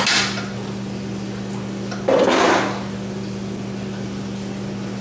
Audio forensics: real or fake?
real